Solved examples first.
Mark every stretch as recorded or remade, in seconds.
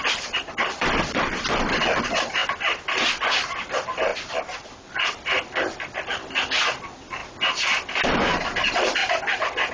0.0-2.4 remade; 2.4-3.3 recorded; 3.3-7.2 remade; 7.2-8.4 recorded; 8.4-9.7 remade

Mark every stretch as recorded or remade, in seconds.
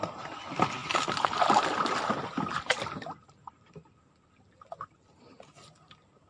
0.0-6.3 recorded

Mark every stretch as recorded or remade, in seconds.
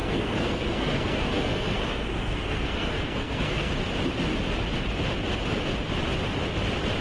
0.0-3.7 remade; 3.7-7.0 recorded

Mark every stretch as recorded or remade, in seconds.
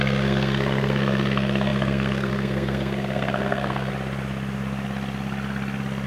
0.0-3.9 remade; 3.9-6.1 recorded